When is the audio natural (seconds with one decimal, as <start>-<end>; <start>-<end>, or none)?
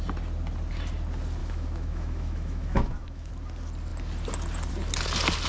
0.0-1.4; 3.3-5.5